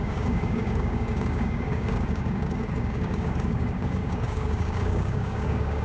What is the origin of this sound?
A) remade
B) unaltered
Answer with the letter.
A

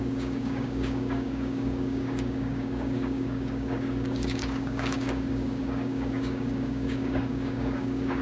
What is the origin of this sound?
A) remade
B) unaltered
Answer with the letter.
A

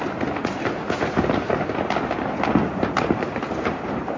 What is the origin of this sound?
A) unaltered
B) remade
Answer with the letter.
A